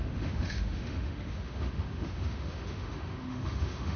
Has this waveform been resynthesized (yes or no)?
yes